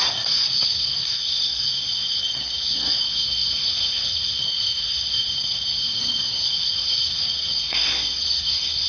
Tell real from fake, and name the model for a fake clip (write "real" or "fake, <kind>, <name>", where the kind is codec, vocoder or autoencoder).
fake, codec, SNAC